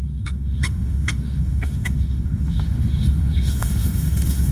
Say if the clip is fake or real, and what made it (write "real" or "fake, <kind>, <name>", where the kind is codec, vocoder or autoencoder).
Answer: fake, autoencoder, DAC-VAE